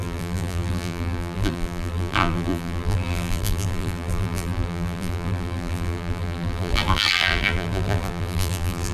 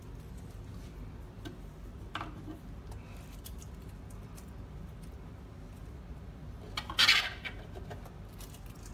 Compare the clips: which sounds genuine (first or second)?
second